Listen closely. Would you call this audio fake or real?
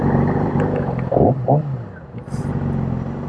real